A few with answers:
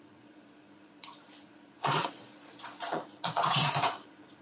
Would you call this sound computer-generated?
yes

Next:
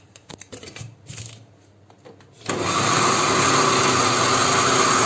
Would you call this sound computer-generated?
no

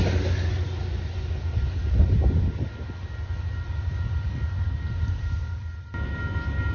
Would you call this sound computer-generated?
no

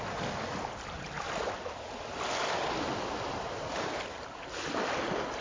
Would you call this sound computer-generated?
no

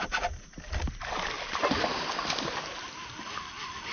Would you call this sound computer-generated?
no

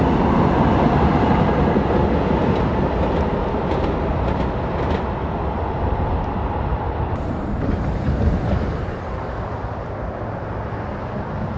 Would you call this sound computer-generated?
no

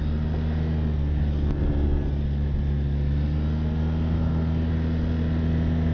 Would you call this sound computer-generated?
no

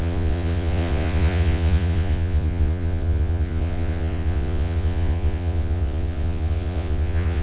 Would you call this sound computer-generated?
yes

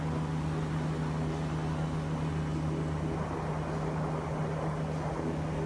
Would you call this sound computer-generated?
no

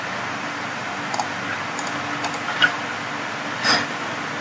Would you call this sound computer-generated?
no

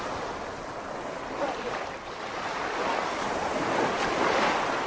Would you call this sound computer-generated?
no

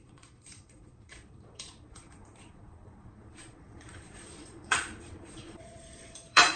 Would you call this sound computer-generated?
yes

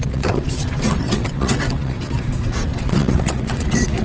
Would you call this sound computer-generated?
yes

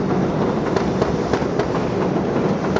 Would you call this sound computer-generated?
no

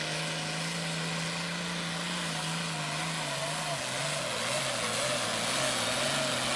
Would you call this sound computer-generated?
no